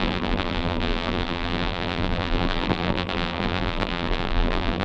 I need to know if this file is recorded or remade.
remade